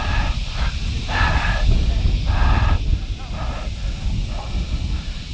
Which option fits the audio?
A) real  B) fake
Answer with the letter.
A